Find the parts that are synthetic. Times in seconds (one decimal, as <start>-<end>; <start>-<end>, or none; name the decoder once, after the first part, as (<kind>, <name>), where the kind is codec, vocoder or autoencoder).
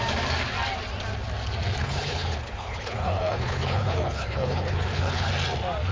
1.8-5.3 (codec, HILCodec)